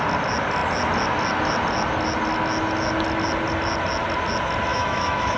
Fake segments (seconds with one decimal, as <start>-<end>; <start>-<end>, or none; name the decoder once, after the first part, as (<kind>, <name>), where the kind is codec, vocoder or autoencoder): 4.7-5.4 (autoencoder, DAC-VAE)